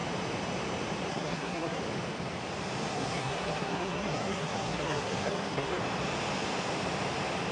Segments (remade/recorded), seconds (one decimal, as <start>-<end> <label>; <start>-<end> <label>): 0.0-1.1 recorded; 1.1-1.8 remade; 1.8-2.9 recorded; 2.9-5.8 remade; 5.8-7.5 recorded